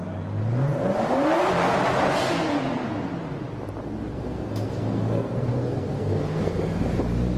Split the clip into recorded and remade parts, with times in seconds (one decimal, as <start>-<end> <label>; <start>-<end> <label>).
0.0-4.1 recorded; 4.1-6.9 remade; 6.9-7.4 recorded